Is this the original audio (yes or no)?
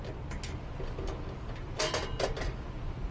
yes